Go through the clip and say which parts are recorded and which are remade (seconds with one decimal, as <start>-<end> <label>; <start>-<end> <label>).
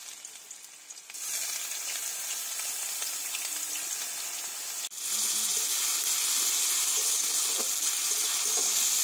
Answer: 0.0-9.0 recorded